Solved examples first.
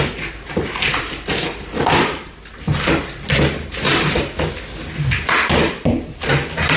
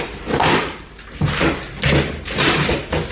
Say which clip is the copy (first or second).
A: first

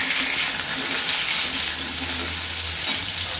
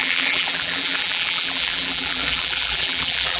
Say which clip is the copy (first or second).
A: second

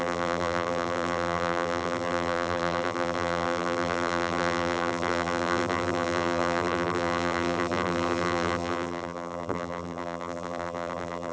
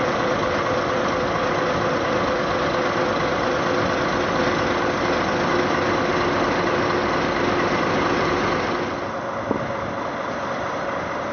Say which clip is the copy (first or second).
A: first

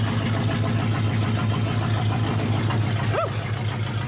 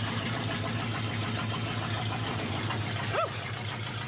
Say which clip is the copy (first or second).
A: second